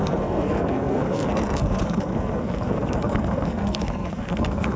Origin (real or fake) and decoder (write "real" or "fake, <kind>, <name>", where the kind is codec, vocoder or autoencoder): fake, codec, SNAC